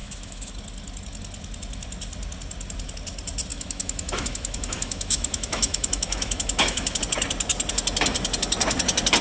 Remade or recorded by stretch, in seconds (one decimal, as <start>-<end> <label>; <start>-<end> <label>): 0.0-0.5 remade; 0.5-3.5 recorded; 3.5-7.0 remade; 7.0-9.2 recorded